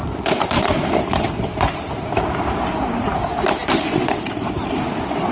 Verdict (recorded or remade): remade